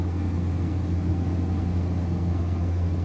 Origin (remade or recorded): remade